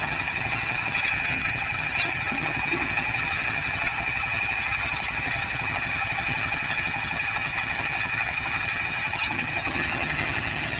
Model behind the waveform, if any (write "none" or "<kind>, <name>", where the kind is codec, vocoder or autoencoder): vocoder, HiFi-GAN